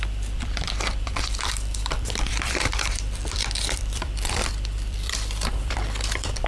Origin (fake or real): fake